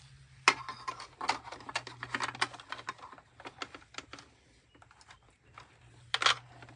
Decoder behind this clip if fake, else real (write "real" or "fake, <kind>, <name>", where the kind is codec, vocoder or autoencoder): real